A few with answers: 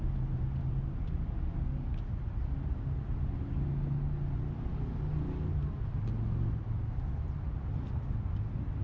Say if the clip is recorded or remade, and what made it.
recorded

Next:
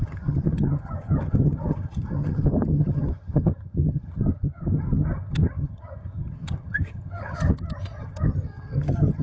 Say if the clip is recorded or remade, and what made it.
remade, vocoder, HiFi-GAN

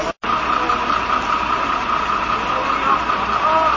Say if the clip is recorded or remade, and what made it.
recorded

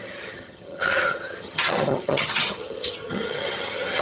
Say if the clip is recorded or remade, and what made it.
remade, vocoder, HiFi-GAN